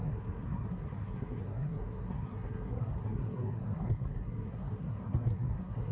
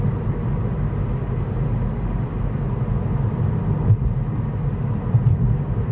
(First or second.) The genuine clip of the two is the second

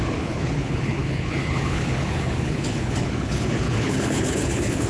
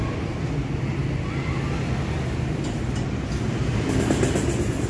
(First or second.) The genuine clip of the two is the second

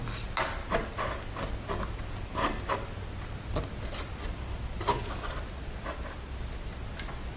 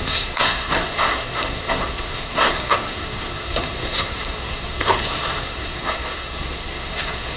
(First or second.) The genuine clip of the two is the first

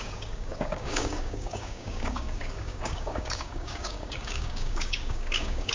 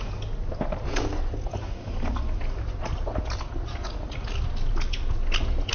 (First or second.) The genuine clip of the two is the second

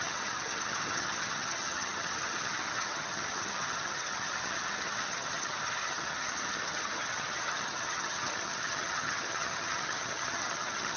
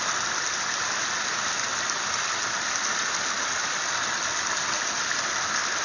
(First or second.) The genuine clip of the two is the second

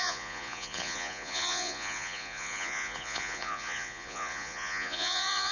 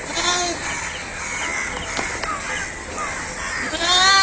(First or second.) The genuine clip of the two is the second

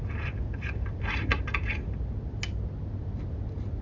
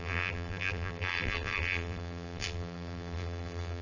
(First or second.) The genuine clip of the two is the first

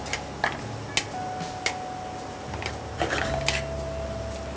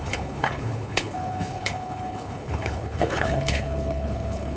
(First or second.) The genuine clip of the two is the first